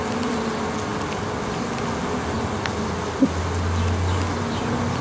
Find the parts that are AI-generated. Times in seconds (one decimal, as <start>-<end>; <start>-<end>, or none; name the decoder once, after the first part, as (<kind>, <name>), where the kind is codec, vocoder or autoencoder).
none

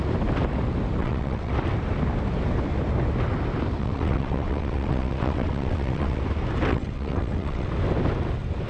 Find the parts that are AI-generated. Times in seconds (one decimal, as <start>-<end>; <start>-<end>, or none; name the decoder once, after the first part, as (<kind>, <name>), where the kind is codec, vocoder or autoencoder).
1.0-1.5 (vocoder, WaveNeXt); 3.8-6.2; 6.7-7.7

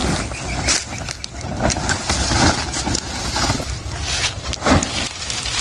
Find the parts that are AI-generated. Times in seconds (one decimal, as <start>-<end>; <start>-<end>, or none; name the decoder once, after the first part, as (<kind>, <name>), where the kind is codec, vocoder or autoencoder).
none

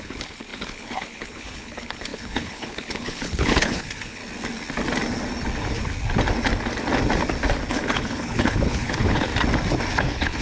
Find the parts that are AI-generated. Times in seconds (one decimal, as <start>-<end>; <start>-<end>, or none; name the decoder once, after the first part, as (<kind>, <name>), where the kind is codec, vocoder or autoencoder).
0.0-4.2 (codec, HILCodec); 7.7-9.3; 10.0-10.4

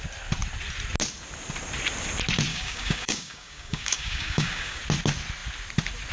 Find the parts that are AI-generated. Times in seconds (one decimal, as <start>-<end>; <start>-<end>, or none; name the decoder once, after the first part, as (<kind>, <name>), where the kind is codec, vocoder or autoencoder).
2.5-4.8 (codec, DAC)

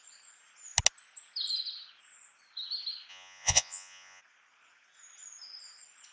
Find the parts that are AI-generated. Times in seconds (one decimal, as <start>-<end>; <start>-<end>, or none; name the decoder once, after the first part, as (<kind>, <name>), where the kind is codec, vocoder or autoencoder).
3.1-4.2 (vocoder, Vocos)

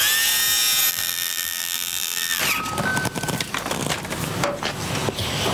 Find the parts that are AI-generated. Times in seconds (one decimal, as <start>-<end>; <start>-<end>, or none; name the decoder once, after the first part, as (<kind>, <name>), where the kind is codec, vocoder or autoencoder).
0.9-2.4 (vocoder, BigVGAN v2)